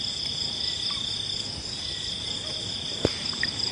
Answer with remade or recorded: recorded